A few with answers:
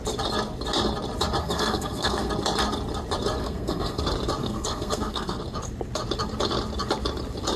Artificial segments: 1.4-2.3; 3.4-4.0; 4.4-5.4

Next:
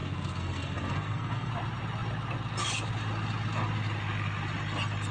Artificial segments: 0.0-1.5

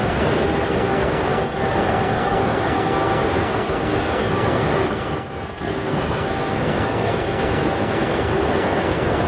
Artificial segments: 0.0-9.3

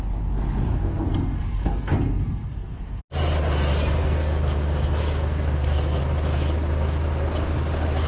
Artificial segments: 0.7-3.0; 4.0-6.0

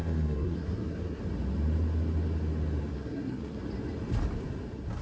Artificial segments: 0.0-1.2; 2.9-3.6

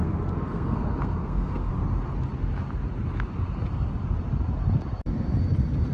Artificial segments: 0.0-1.7

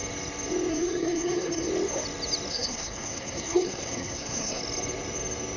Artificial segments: 0.7-1.7; 2.5-4.6